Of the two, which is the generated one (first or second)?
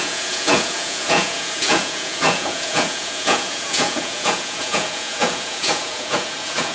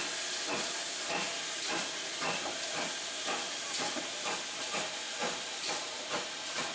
first